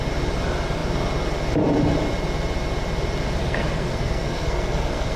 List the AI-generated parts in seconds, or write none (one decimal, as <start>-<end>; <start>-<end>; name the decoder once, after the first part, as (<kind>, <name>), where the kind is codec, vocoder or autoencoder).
3.4-5.2 (codec, SNAC)